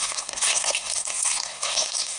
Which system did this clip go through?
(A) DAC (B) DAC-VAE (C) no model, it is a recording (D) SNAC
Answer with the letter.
D